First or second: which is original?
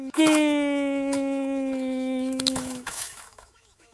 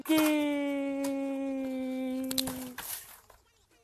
second